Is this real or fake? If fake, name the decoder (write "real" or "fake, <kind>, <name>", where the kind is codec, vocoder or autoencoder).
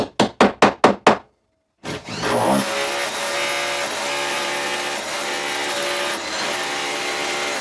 real